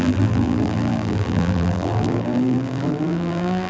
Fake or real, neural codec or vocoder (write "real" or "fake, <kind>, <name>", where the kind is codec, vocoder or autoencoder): fake, vocoder, BigVGAN v2